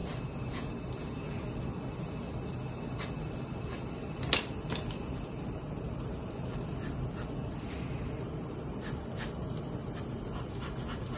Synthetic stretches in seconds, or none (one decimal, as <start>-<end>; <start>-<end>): none

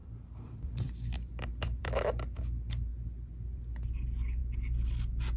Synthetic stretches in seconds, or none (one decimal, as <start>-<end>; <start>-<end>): 0.0-2.4; 2.9-3.9

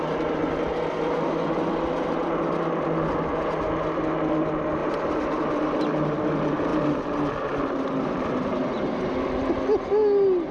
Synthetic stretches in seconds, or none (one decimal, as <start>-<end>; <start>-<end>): 4.8-5.4